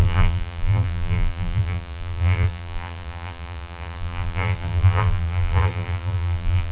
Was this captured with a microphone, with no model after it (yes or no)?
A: no